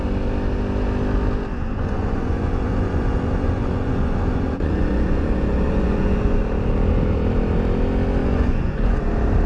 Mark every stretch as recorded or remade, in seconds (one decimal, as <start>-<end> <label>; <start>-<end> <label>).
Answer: 0.0-1.5 recorded; 1.5-6.4 remade; 6.4-8.2 recorded; 8.2-9.1 remade; 9.1-9.5 recorded